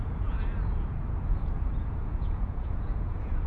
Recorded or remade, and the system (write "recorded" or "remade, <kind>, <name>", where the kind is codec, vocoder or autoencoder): remade, vocoder, Vocos